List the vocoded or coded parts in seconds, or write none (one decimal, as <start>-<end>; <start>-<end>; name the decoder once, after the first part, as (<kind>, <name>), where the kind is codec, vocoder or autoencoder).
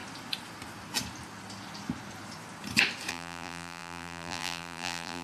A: 3.1-5.2 (vocoder, BigVGAN v2)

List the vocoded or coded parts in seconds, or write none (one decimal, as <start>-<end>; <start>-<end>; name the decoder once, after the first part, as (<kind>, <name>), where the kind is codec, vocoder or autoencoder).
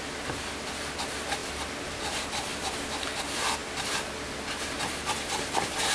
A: none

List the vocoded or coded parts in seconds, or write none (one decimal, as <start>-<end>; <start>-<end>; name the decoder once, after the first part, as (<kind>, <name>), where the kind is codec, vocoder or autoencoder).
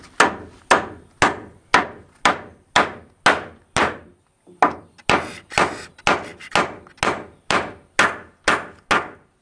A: none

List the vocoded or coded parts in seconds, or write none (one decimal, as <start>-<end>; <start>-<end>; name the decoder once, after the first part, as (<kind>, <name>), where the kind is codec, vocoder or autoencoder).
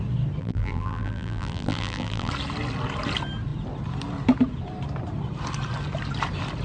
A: 0.4-2.3 (vocoder, BigVGAN v2)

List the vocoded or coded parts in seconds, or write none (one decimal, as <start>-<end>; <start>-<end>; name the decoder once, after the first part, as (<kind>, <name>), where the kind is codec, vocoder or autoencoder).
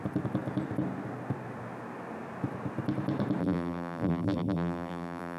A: 3.4-5.4 (vocoder, BigVGAN v2)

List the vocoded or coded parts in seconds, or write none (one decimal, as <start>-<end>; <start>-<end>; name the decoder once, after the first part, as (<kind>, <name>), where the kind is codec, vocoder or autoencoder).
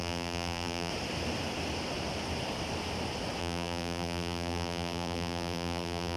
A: 0.0-0.9 (vocoder, BigVGAN v2); 3.4-6.2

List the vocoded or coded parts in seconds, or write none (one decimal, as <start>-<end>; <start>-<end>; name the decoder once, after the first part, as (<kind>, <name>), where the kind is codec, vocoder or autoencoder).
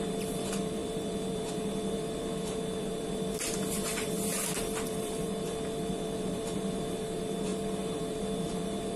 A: 0.0-9.0 (vocoder, BigVGAN v2)